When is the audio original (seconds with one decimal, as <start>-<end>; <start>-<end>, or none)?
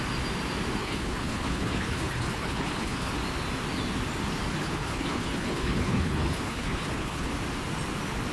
0.0-0.8; 3.1-4.5; 7.3-8.3